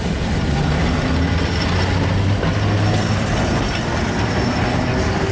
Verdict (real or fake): real